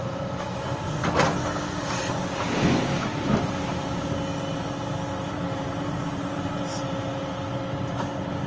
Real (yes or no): yes